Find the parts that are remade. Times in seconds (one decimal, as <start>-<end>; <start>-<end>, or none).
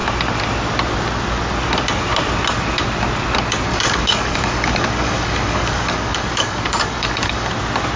3.7-7.5